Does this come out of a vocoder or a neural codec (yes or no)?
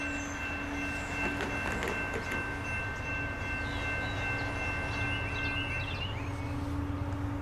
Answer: no